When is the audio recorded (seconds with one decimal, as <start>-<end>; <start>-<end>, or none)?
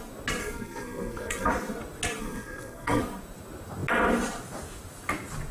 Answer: 0.0-0.4; 1.5-2.2; 3.0-5.5